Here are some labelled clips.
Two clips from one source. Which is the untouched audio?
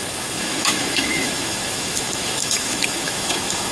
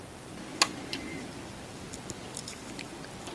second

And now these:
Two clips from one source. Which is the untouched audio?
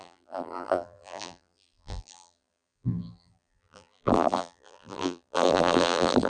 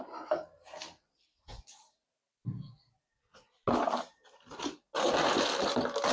second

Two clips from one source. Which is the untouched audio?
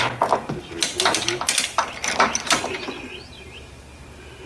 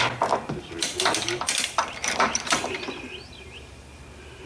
first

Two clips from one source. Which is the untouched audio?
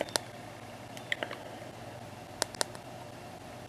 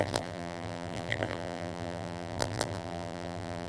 first